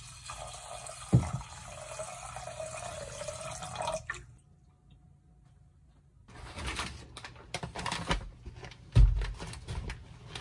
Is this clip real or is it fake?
real